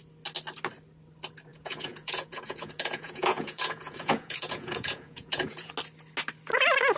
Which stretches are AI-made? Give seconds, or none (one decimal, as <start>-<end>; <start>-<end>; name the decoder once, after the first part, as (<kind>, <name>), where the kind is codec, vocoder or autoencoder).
1.5-5.7 (vocoder, Vocos)